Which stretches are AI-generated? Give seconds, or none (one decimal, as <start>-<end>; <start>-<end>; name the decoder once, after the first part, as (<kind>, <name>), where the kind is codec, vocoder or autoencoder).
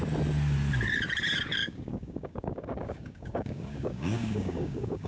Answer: 1.6-5.1 (codec, DAC)